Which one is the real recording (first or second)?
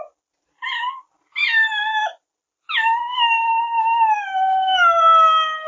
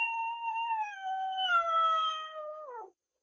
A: first